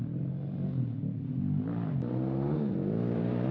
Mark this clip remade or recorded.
recorded